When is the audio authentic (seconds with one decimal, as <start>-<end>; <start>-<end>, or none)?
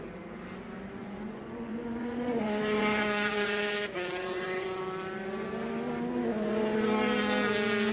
0.0-1.0; 4.8-7.9